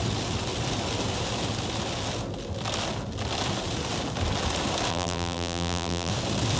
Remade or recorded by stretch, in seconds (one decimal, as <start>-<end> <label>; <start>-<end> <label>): 0.0-4.9 recorded; 4.9-6.1 remade; 6.1-6.6 recorded